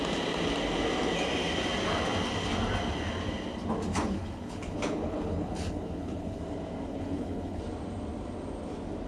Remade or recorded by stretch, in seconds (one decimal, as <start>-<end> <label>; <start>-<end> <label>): 0.0-3.9 recorded; 3.9-6.4 remade; 6.4-6.9 recorded; 6.9-7.6 remade; 7.6-9.1 recorded